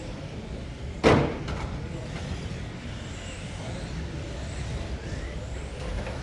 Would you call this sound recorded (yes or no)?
yes